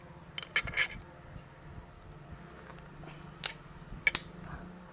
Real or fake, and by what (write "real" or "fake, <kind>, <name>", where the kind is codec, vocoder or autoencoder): real